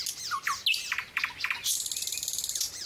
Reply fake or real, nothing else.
real